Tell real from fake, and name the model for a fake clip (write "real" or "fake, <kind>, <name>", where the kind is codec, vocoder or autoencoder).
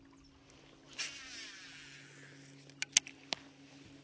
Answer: real